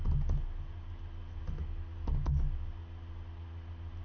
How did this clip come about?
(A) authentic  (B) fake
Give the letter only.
A